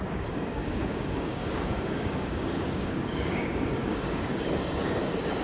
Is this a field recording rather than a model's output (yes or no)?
no